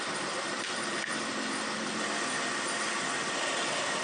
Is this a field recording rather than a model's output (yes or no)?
yes